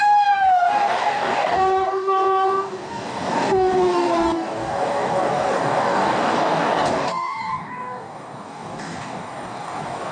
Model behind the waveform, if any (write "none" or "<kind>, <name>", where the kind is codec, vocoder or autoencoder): codec, DAC